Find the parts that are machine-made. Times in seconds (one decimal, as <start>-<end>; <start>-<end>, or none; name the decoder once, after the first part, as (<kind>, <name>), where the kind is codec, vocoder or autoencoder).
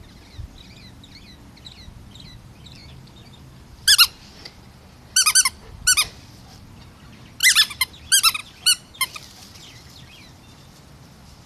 8.4-8.9 (vocoder, BigVGAN v2)